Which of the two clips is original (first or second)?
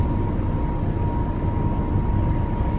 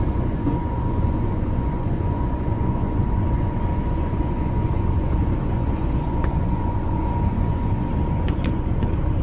first